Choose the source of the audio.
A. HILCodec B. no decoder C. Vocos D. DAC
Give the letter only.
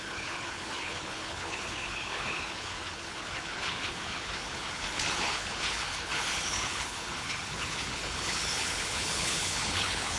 A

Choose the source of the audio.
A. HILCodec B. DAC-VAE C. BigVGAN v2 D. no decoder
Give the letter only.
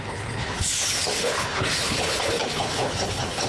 A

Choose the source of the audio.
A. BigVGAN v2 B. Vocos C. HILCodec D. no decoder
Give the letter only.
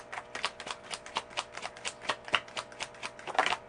D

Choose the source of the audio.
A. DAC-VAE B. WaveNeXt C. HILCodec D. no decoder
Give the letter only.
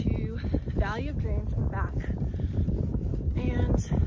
D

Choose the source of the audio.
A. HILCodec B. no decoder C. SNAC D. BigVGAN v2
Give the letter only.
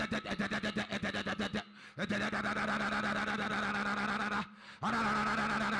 B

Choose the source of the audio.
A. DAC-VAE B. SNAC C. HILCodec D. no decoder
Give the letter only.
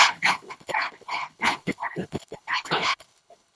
C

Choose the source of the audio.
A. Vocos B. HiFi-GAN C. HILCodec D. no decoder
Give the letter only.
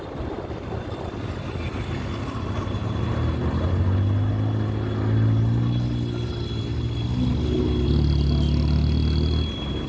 D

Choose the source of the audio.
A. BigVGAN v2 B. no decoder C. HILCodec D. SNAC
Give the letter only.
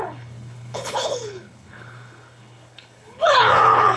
C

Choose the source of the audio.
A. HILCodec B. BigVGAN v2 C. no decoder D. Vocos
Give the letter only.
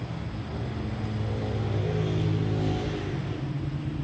C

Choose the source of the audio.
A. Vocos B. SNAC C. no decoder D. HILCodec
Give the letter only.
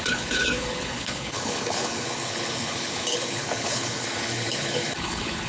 D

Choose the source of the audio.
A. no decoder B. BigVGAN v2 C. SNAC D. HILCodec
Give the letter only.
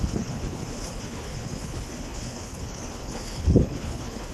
D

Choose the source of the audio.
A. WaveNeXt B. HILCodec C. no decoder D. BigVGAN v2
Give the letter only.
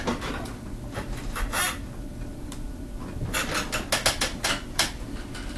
C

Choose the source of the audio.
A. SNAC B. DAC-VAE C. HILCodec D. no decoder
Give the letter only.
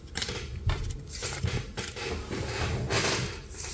D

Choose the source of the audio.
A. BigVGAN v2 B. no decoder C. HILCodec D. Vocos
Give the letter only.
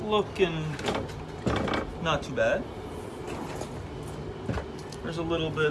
B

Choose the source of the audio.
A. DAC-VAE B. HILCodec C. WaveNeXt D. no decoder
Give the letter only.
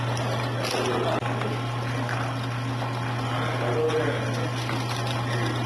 D